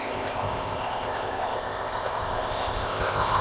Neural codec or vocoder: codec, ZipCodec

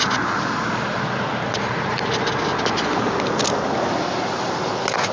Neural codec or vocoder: none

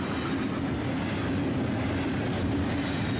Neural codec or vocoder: none